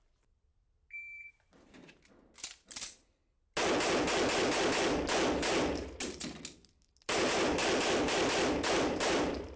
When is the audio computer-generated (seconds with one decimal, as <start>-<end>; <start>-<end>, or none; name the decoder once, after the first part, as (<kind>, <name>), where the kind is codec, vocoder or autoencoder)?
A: 0.0-1.8 (vocoder, BigVGAN v2); 6.7-7.6; 8.6-9.6